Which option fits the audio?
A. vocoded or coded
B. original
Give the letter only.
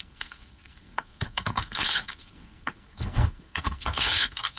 A